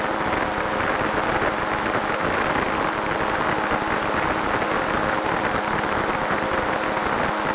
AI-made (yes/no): no